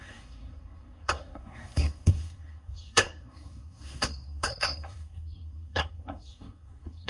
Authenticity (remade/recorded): remade